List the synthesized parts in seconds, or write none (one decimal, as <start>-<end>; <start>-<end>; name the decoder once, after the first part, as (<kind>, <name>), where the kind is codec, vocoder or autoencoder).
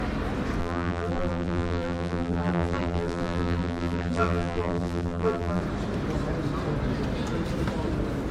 0.6-5.6 (vocoder, BigVGAN v2)